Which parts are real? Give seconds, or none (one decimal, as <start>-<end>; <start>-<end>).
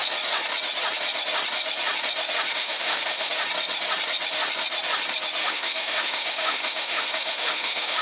0.0-2.5; 3.3-5.4